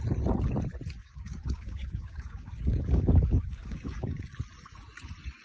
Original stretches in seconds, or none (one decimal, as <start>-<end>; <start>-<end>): 0.0-1.0; 4.2-5.4